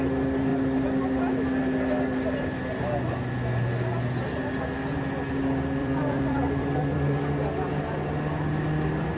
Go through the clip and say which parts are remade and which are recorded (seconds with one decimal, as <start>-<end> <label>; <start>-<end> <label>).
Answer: 0.0-5.8 recorded; 5.8-7.2 remade; 7.2-9.2 recorded